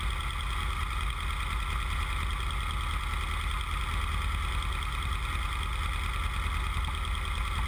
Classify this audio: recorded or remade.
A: recorded